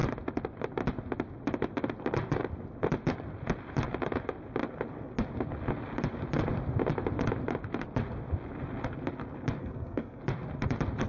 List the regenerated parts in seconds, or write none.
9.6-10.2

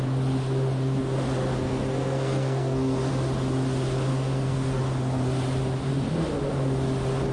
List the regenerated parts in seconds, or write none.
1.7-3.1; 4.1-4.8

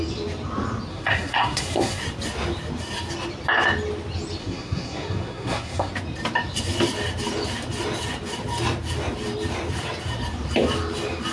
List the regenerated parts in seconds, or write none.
0.9-2.0; 4.4-5.9